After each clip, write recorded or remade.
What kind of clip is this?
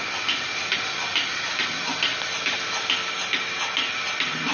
recorded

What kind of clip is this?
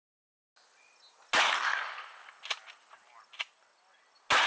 recorded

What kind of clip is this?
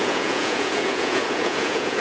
remade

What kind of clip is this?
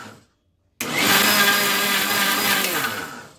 recorded